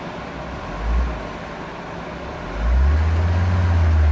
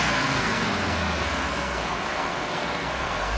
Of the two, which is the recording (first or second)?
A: first